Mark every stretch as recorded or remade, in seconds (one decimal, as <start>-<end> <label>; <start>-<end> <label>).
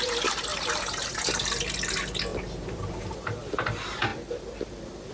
0.0-0.5 recorded; 0.5-1.1 remade; 1.1-2.3 recorded; 2.3-3.5 remade; 3.5-5.1 recorded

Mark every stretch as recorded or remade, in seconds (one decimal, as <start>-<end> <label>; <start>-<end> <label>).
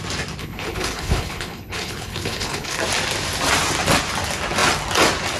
0.0-0.4 recorded; 0.4-2.8 remade; 2.8-5.4 recorded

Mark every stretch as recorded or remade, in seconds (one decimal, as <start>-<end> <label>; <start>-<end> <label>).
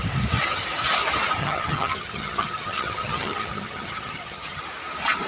0.0-1.4 recorded; 1.4-4.6 remade; 4.6-5.3 recorded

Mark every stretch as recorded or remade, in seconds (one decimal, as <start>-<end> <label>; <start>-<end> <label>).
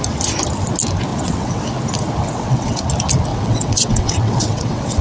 0.0-1.1 recorded; 1.1-1.6 remade; 1.6-2.2 recorded; 2.2-2.9 remade; 2.9-3.3 recorded; 3.3-5.0 remade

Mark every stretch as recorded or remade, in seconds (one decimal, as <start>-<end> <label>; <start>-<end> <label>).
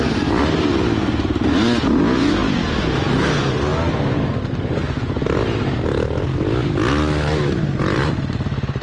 0.0-8.8 recorded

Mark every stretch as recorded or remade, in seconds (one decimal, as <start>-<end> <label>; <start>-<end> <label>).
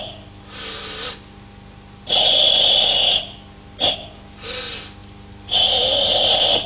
0.0-6.7 recorded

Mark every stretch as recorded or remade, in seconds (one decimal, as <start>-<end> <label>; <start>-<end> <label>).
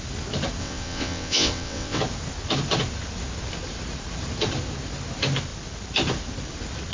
0.0-0.6 recorded; 0.6-2.0 remade; 2.0-6.9 recorded